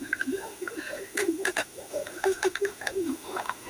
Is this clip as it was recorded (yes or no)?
no